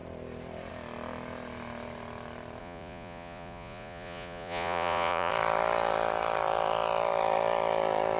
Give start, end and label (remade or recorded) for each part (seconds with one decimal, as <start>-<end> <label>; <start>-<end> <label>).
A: 0.0-2.6 recorded; 2.6-5.3 remade; 5.3-8.2 recorded